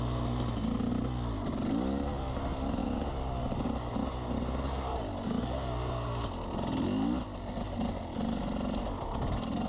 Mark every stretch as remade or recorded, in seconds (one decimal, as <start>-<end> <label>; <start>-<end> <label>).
0.0-9.7 recorded